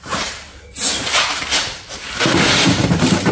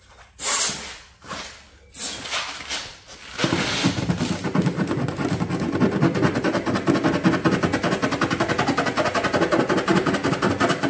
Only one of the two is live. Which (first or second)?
second